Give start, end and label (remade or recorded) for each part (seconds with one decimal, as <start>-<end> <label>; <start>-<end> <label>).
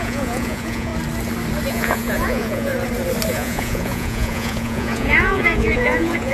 0.0-0.9 remade; 0.9-1.7 recorded; 1.7-2.7 remade; 2.7-3.3 recorded; 3.3-6.3 remade